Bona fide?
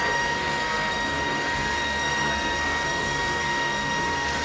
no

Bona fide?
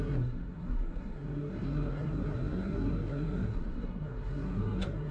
no